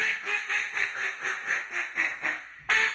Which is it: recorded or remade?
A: remade